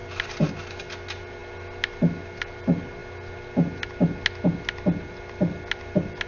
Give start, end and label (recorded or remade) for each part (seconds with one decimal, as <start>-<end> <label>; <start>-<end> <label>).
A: 0.0-6.3 recorded